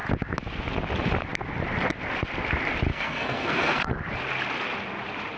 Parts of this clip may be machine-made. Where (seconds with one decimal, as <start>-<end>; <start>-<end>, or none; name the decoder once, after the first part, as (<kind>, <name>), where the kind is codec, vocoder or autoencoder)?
2.9-3.9 (codec, SNAC)